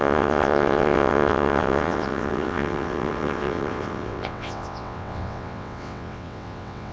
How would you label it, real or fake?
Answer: fake